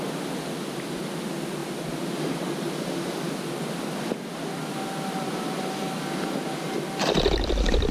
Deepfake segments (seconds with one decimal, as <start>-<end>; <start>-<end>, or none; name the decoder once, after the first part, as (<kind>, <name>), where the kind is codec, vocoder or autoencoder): none